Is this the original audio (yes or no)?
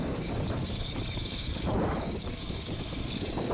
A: no